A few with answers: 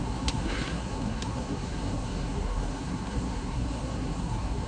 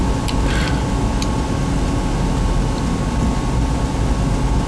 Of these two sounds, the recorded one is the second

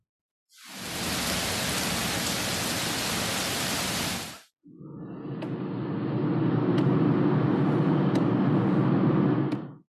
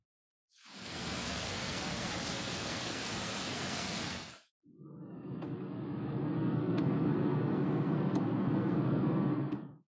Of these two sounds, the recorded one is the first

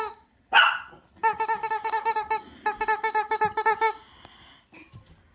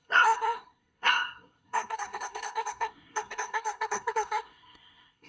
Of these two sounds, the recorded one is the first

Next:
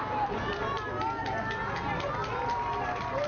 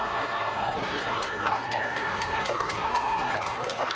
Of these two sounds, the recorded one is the first